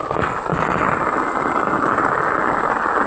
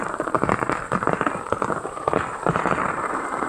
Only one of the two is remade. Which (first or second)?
second